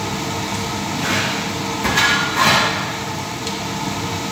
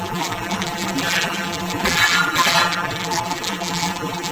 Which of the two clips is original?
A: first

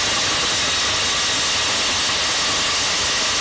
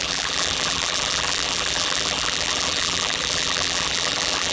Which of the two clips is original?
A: first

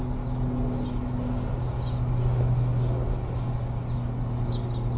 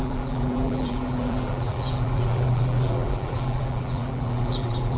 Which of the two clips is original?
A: first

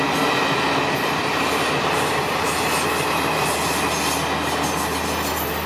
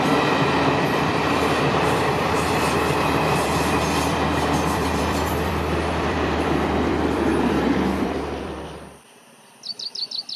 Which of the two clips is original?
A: first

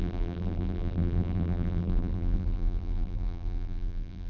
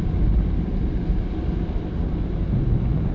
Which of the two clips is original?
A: second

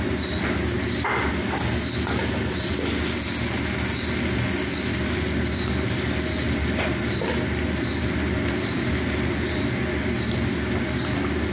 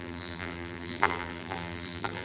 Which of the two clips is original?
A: first